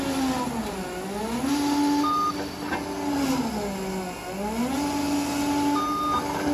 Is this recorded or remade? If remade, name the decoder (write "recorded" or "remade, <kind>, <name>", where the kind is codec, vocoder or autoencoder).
recorded